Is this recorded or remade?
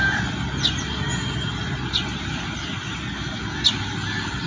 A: recorded